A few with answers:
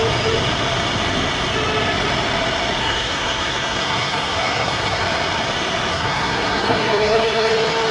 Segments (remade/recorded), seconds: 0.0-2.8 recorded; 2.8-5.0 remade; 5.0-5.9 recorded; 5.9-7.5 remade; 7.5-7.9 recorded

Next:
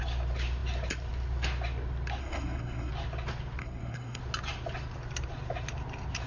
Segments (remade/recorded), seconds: 0.0-2.2 recorded; 2.2-2.9 remade; 2.9-3.6 recorded; 3.6-4.2 remade; 4.2-6.3 recorded

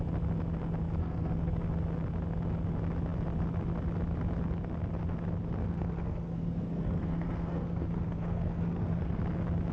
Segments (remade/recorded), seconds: 0.0-1.0 recorded; 1.0-1.5 remade; 1.5-5.6 recorded; 5.6-9.2 remade; 9.2-9.7 recorded

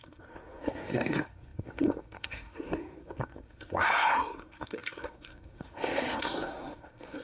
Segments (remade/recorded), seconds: 0.0-7.2 remade

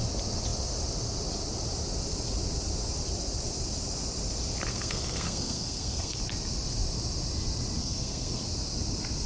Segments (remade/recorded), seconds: 0.0-4.7 recorded; 4.7-6.2 remade; 6.2-7.8 recorded; 7.8-8.4 remade; 8.4-9.3 recorded

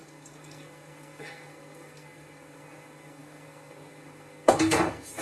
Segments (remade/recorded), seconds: 0.0-5.2 remade